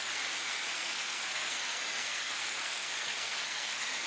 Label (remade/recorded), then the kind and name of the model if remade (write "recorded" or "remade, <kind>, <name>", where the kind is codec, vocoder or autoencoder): remade, codec, SNAC